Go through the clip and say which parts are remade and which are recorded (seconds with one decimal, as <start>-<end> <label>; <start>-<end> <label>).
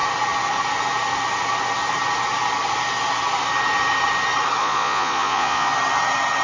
0.0-4.6 recorded; 4.6-5.7 remade; 5.7-6.4 recorded